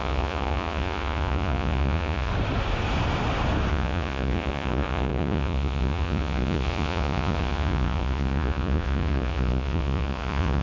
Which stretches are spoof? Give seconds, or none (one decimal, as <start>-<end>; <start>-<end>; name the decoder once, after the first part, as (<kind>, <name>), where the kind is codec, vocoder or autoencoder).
0.0-2.3 (vocoder, Vocos); 3.7-10.6